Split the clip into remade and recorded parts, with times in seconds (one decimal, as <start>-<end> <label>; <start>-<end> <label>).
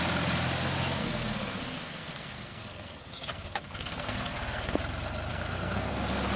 0.0-1.0 recorded; 1.0-4.8 remade; 4.8-5.3 recorded; 5.3-5.9 remade; 5.9-6.4 recorded